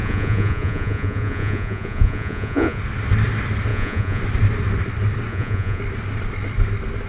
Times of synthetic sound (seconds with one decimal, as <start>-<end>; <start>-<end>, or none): 0.0-2.8; 3.7-4.2; 5.3-5.8